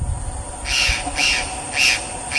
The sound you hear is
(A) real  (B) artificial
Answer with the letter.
A